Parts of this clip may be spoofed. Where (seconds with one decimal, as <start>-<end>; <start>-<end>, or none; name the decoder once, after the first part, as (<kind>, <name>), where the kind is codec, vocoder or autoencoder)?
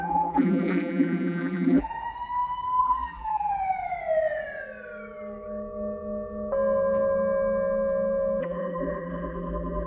0.0-1.9 (vocoder, BigVGAN v2); 2.8-3.5; 8.4-9.9